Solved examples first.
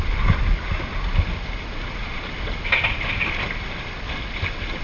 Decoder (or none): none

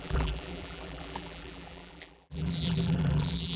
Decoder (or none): vocoder, BigVGAN v2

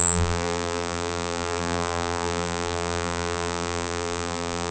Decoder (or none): vocoder, BigVGAN v2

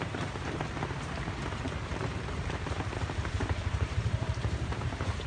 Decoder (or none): vocoder, BigVGAN v2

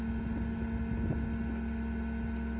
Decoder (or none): none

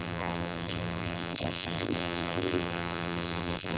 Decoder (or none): vocoder, BigVGAN v2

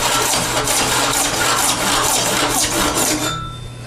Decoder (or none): none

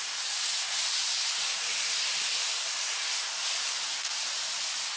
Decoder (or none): none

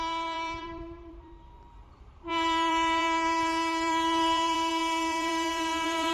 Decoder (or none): vocoder, BigVGAN v2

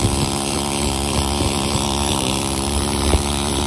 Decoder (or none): vocoder, BigVGAN v2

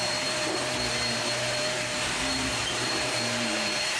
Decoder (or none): vocoder, BigVGAN v2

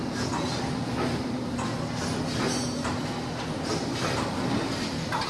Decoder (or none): none